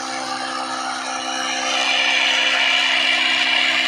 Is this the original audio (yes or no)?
yes